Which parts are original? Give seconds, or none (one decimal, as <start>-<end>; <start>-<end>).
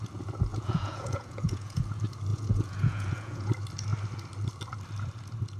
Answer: 0.0-0.5; 1.8-2.3; 3.5-5.6